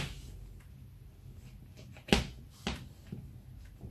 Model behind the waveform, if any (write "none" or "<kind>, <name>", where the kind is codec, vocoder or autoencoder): none